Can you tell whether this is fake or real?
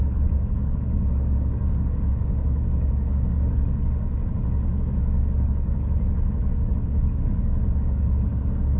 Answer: fake